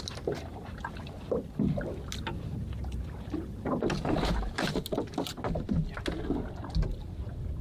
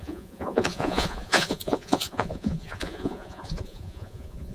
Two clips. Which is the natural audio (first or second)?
first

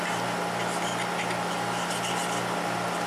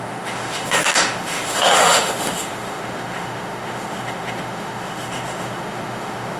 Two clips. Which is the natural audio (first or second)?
first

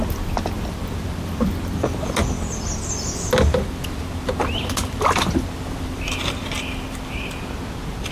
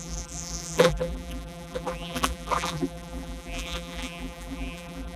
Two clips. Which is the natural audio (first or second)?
first